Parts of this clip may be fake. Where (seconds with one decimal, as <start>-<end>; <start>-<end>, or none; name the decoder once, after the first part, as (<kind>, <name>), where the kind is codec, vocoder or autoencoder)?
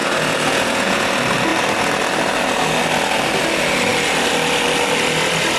0.0-1.1 (vocoder, Vocos)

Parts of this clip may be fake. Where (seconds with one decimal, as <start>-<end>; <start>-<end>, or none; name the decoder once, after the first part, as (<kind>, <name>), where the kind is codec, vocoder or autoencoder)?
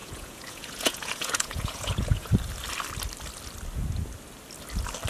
0.0-2.3 (vocoder, Vocos)